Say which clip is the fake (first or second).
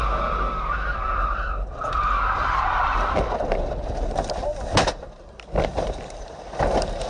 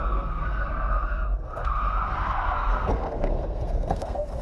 second